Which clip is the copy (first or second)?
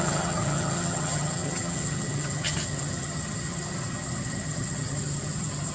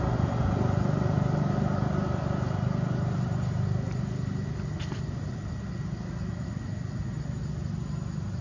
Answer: first